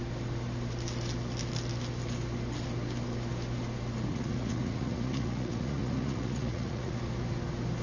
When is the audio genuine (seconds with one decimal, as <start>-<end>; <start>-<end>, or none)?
0.0-4.1; 7.0-7.8